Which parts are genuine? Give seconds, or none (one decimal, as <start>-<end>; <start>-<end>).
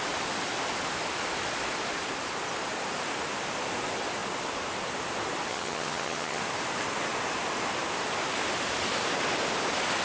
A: 0.0-5.5; 6.4-10.0